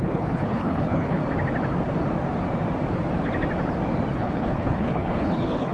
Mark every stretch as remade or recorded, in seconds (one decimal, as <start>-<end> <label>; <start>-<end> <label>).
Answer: 0.0-1.2 remade; 1.2-4.1 recorded; 4.1-5.7 remade